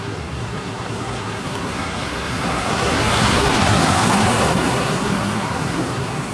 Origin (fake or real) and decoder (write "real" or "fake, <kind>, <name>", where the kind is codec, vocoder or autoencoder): fake, codec, SNAC